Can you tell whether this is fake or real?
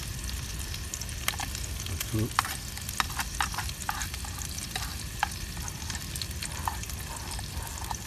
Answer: real